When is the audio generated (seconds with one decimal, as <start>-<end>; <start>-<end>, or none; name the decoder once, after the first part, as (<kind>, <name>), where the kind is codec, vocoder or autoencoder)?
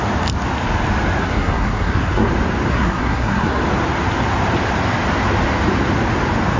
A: 1.2-2.3 (codec, SNAC); 2.7-3.6